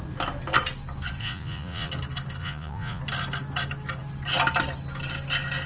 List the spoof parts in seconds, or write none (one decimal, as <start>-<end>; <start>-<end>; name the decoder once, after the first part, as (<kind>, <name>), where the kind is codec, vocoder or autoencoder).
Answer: 1.2-1.9 (vocoder, Vocos); 2.4-3.0